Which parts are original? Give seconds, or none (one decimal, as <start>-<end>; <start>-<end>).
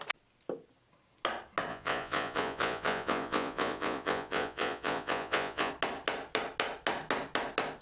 0.0-1.7; 5.7-7.8